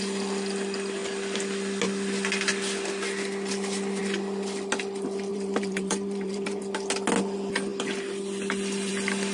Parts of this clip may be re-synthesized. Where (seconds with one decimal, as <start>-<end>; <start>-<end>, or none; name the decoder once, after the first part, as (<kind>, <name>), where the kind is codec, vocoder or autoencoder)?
5.3-6.6 (vocoder, BigVGAN v2)